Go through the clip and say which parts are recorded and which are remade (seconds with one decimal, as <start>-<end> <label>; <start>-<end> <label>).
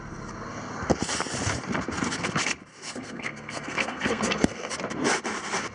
0.0-2.7 recorded; 2.7-4.7 remade; 4.7-5.7 recorded